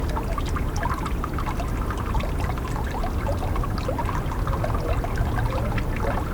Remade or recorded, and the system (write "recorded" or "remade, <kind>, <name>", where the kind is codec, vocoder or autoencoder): recorded